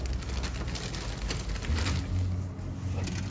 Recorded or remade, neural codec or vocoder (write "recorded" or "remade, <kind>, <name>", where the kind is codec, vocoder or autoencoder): recorded